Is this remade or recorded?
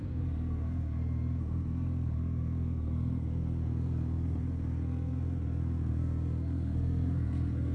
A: remade